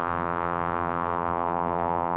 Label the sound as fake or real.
fake